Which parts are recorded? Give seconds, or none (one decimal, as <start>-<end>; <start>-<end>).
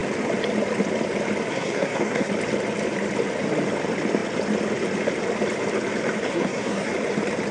0.0-1.5; 2.3-6.3; 6.9-7.5